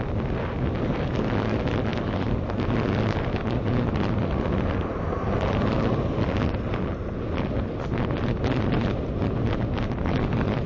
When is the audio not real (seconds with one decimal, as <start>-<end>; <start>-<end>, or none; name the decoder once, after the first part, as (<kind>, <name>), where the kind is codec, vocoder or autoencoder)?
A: none